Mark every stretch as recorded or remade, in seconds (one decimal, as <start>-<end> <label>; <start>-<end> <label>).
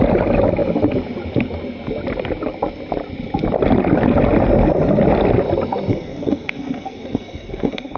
0.0-5.9 recorded; 5.9-8.0 remade